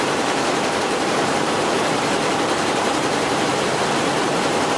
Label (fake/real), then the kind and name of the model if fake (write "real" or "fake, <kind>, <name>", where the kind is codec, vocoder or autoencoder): fake, vocoder, BigVGAN v2